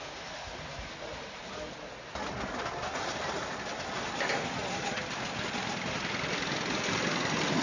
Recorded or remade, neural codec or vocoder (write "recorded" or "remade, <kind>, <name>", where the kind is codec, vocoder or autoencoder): recorded